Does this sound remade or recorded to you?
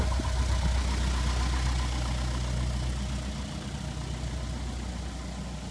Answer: recorded